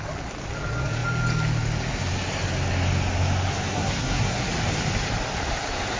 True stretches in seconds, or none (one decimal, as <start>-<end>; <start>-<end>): 0.0-3.7; 4.5-6.0